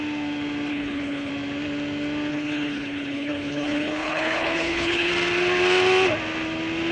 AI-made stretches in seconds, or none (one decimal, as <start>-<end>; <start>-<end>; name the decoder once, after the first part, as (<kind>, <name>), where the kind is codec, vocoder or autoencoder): 0.7-1.3 (codec, HILCodec); 2.3-5.1